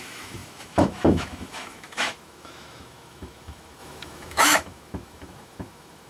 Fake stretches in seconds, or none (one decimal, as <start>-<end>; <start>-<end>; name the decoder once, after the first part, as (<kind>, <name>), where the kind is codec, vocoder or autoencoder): 0.0-6.1 (autoencoder, DAC-VAE)